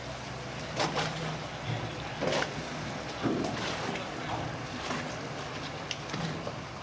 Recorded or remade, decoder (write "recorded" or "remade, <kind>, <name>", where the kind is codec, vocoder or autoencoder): recorded